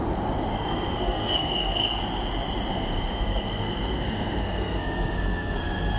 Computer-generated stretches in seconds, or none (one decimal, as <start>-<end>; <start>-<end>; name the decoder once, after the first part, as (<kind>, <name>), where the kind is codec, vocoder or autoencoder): 0.5-2.0 (codec, SNAC); 2.7-6.0